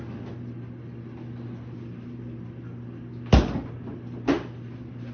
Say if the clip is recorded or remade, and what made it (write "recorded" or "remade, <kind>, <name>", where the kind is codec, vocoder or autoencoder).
recorded